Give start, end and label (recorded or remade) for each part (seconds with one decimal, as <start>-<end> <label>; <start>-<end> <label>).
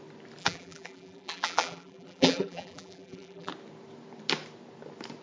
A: 0.0-0.4 recorded; 0.4-3.5 remade; 3.5-5.2 recorded